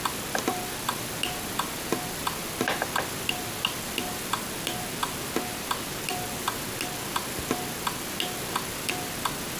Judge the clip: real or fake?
real